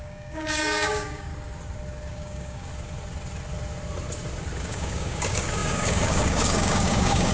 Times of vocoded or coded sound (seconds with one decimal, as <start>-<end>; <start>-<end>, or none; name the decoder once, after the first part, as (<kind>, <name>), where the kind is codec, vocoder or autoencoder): 0.0-1.3 (codec, DAC); 2.1-2.7; 4.6-7.3